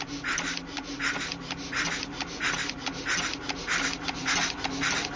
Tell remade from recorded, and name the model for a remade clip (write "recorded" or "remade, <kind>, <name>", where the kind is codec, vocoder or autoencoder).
recorded